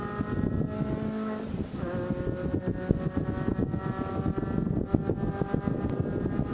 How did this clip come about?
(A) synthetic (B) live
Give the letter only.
B